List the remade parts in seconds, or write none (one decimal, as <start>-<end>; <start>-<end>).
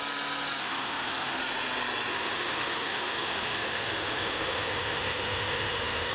0.6-1.4; 2.1-6.1